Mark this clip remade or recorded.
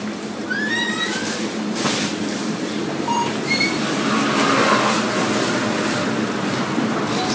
recorded